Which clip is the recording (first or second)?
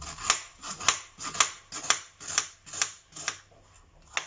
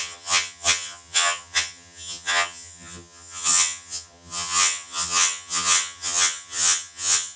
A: first